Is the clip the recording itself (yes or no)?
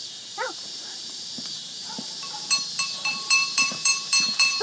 no